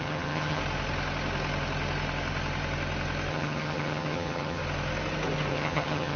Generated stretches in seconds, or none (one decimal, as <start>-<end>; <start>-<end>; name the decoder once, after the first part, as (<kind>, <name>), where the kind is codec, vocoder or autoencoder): 0.0-0.6 (vocoder, HiFi-GAN); 3.3-4.6; 5.5-6.2